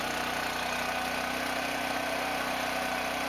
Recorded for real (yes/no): yes